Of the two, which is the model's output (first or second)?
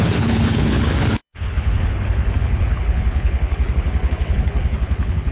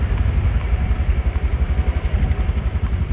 first